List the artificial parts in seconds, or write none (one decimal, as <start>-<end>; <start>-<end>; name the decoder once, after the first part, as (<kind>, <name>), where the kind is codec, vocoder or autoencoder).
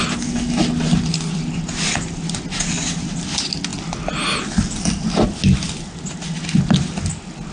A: none